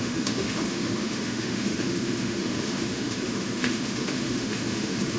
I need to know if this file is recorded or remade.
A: remade